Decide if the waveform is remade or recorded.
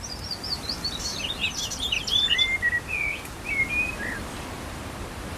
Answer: recorded